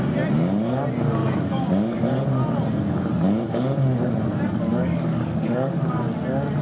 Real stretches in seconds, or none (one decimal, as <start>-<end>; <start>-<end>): 0.0-1.2; 2.0-4.7; 5.8-6.6